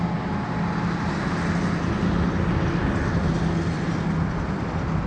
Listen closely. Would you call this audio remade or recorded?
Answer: recorded